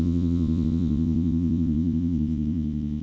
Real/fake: fake